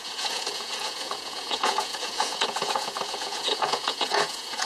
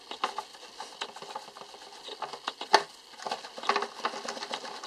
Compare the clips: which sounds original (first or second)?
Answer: second